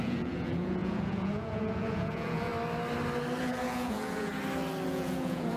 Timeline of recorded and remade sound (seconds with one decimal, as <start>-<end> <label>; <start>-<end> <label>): 0.0-2.5 remade; 2.5-3.4 recorded; 3.4-4.3 remade; 4.3-4.9 recorded; 4.9-5.6 remade